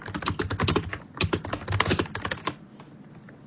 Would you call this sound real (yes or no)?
yes